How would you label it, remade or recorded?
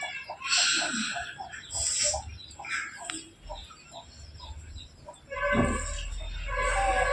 recorded